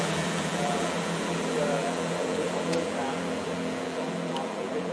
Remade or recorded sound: remade